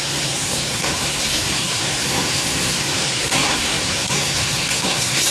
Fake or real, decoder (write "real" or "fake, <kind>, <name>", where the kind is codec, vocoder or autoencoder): fake, codec, SNAC